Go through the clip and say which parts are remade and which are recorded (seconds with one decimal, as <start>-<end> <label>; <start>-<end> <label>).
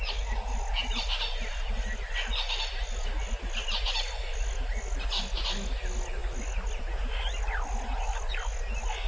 0.0-9.1 recorded